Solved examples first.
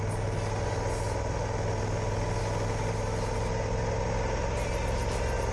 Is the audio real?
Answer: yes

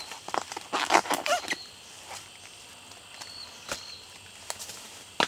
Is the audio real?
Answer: yes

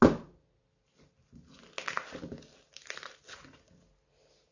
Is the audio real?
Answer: yes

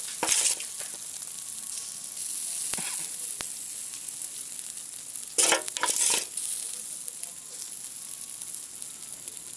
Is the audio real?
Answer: yes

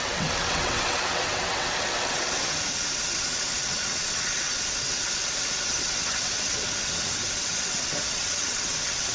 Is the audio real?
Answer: no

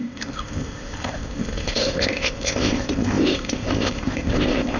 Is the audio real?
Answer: no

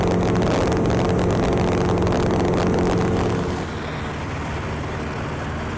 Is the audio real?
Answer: yes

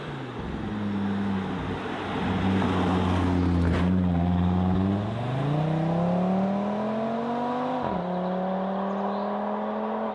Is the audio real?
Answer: yes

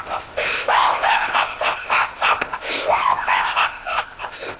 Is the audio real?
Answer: no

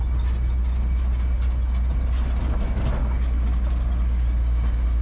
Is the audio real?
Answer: yes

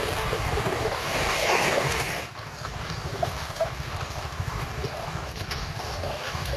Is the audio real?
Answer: no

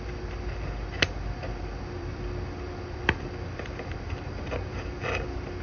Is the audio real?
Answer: no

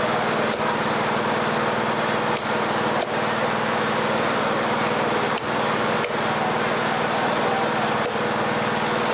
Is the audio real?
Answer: yes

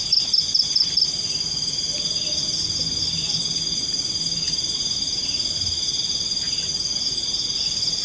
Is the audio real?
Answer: yes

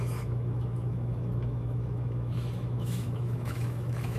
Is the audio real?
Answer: no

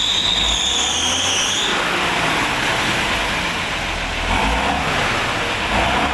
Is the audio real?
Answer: yes